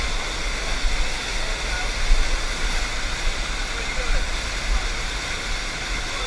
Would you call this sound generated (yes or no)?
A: no